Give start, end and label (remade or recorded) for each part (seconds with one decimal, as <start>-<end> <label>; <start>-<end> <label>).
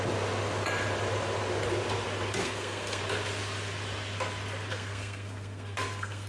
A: 0.0-2.4 recorded; 2.4-3.0 remade; 3.0-4.7 recorded; 4.7-6.3 remade